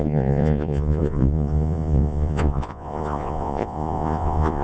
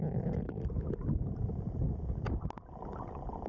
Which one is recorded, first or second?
second